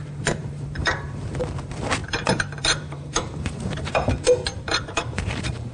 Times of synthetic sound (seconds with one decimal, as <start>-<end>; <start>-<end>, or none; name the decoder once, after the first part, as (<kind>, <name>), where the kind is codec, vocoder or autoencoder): 0.0-5.7 (vocoder, BigVGAN v2)